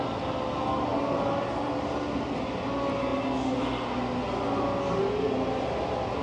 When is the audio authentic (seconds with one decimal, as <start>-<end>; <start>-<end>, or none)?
0.0-6.2